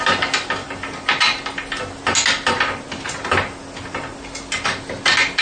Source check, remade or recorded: recorded